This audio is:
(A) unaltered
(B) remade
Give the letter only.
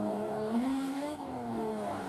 B